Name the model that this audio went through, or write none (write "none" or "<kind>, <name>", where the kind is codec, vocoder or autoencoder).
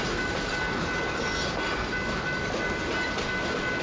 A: none